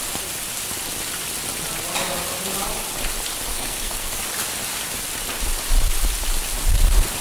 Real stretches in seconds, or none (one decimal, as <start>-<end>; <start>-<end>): 0.0-3.5; 4.2-7.2